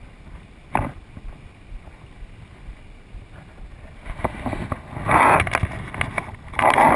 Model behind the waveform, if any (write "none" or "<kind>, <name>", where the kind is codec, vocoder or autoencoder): none